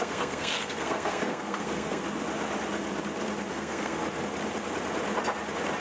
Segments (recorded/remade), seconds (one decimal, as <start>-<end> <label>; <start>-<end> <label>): 0.0-2.0 remade; 2.0-3.5 recorded; 3.5-4.0 remade; 4.0-5.8 recorded